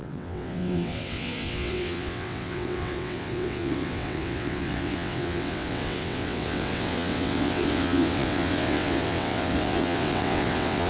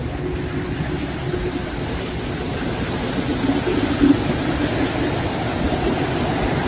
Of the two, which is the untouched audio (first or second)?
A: second